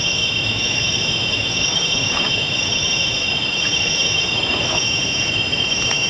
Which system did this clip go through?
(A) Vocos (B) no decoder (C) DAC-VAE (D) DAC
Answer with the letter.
C